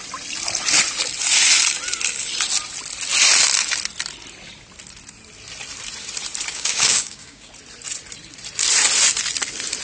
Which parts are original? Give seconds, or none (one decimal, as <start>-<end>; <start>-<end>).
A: 0.0-6.5; 7.5-9.8

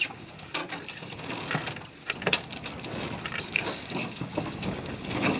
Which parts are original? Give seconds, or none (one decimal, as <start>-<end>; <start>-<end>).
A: 0.6-3.4

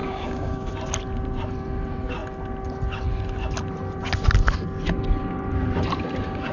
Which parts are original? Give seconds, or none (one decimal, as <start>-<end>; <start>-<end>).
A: 0.7-6.5

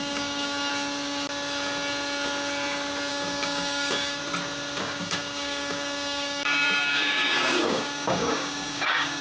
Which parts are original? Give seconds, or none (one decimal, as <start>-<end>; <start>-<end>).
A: 0.7-3.1; 4.2-4.8